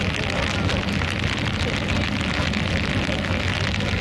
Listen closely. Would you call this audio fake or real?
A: real